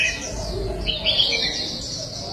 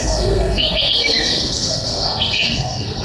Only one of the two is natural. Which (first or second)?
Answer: first